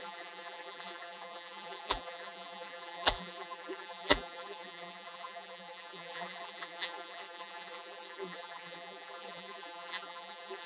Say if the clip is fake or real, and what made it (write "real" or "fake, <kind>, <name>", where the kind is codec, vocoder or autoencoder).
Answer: fake, vocoder, BigVGAN v2